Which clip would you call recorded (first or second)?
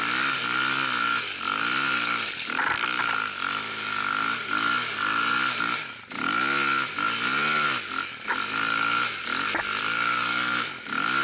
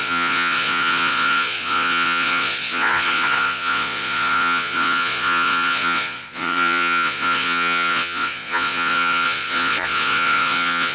first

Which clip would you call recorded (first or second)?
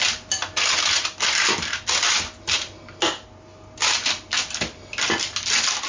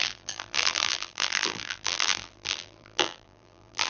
first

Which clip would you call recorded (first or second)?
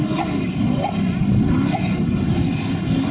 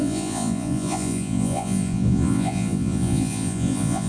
first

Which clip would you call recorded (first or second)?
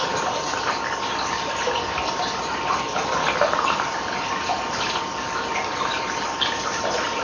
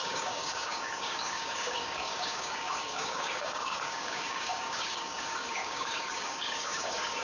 first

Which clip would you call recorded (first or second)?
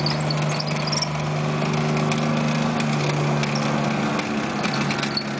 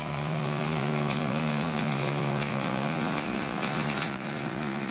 first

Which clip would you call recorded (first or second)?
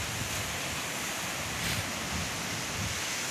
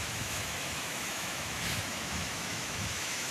first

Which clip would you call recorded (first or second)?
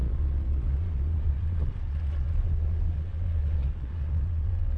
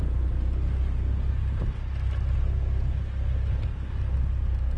second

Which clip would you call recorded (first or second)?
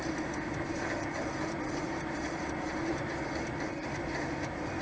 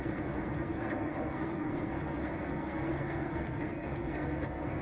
first